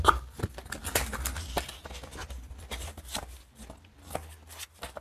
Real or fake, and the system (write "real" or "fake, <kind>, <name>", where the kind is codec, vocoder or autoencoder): real